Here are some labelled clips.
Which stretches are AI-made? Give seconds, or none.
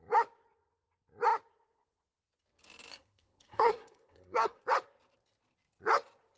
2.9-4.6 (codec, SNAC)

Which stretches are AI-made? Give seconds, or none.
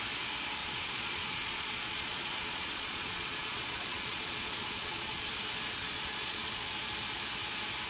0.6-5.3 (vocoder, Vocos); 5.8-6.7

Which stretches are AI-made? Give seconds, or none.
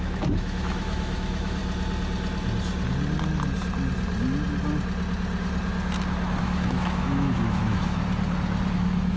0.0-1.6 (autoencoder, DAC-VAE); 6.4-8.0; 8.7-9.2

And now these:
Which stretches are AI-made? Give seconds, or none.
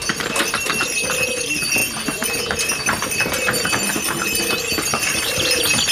none